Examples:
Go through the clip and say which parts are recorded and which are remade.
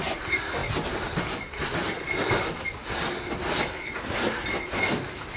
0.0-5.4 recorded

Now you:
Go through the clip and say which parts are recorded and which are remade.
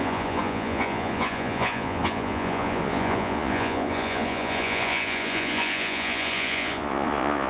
0.0-7.5 remade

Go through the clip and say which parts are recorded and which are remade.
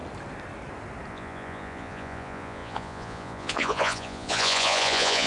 0.0-1.1 recorded; 1.1-5.3 remade